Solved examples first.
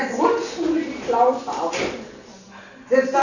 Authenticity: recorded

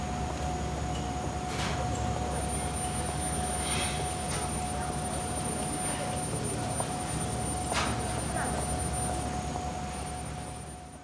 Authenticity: recorded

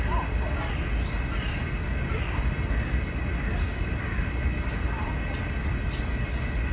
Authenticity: recorded